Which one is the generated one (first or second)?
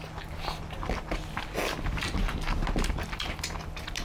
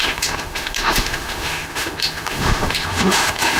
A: second